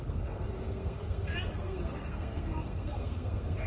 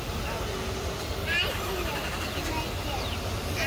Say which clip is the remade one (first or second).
first